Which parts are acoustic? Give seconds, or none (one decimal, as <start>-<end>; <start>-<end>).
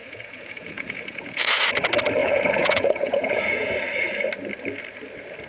1.5-2.2; 3.7-5.5